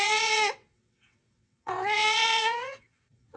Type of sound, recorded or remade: remade